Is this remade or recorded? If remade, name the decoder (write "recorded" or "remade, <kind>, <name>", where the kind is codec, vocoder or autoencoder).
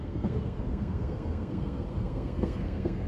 remade, codec, SNAC